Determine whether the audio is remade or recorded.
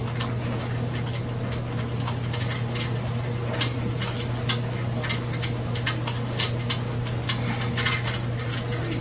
recorded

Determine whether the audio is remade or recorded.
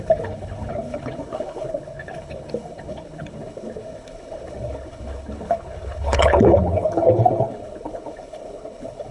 remade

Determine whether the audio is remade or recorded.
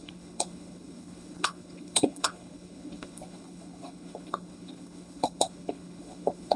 remade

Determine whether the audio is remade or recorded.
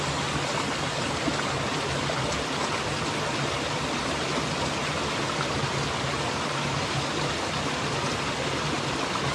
recorded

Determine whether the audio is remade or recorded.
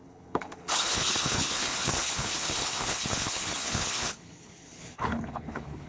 remade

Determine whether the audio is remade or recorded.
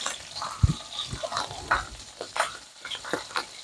recorded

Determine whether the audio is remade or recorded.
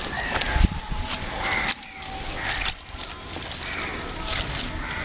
recorded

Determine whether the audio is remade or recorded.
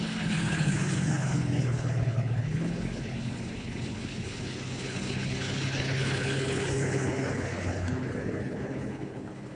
remade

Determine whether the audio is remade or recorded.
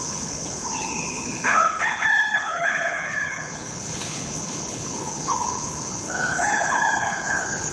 remade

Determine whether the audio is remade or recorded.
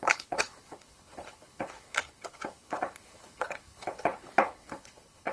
remade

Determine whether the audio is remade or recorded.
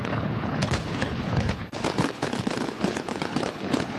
remade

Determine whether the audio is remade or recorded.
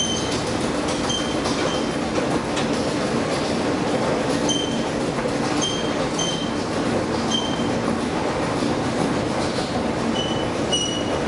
recorded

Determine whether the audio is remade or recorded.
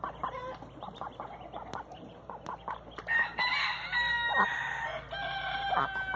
recorded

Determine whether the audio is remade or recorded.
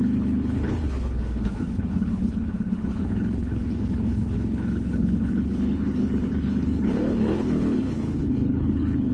remade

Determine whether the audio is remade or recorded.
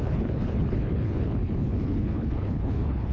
remade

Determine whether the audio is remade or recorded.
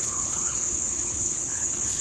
remade